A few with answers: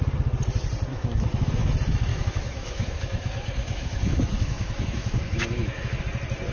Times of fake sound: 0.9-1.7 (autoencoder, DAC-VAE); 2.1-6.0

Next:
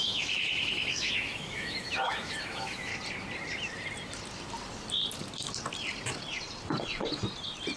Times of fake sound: 0.0-2.9 (autoencoder, DAC-VAE)

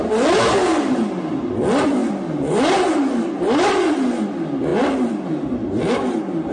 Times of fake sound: none

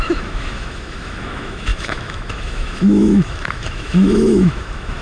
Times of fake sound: 0.0-5.0 (autoencoder, DAC-VAE)

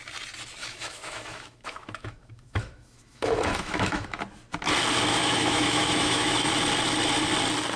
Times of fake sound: 0.6-4.2 (autoencoder, DAC-VAE); 5.1-6.5